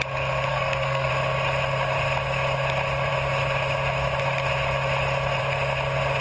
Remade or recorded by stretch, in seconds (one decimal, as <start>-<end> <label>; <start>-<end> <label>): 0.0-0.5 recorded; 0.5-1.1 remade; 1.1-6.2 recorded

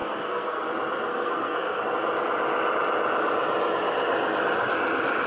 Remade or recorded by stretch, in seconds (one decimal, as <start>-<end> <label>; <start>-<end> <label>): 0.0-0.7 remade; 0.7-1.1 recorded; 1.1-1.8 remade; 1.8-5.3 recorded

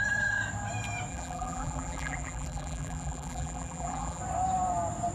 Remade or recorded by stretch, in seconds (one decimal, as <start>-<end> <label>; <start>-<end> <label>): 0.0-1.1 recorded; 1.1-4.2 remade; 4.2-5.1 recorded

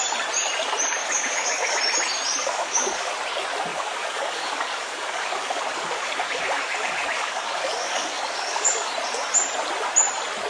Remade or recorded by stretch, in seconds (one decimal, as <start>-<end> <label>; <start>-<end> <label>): 0.0-1.0 recorded; 1.0-1.8 remade; 1.8-2.4 recorded; 2.4-3.1 remade; 3.1-3.7 recorded; 3.7-8.9 remade; 8.9-10.5 recorded

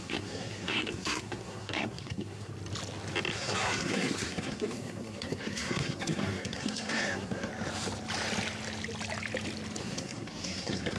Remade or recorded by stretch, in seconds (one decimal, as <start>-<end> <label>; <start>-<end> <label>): 0.0-2.5 remade; 2.5-3.3 recorded; 3.3-7.5 remade; 7.5-9.8 recorded; 9.8-11.0 remade